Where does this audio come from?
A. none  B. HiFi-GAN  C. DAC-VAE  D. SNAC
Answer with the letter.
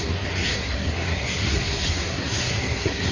D